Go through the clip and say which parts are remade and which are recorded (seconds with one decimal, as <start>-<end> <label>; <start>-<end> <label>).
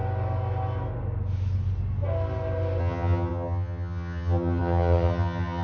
0.0-2.8 recorded; 2.8-5.6 remade